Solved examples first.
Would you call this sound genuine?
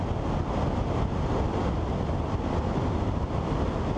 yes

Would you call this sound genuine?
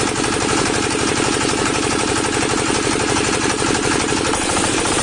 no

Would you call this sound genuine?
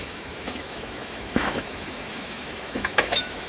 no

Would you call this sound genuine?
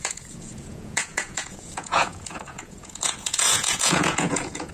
no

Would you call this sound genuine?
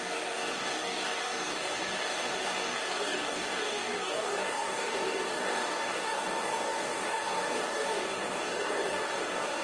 no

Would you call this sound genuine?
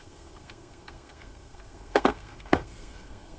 no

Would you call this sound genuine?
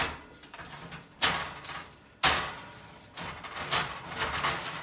yes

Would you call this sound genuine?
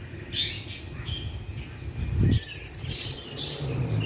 yes